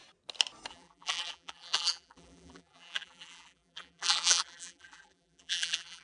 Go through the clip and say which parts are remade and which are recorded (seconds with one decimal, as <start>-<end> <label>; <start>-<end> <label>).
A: 0.0-0.7 recorded; 0.7-6.0 remade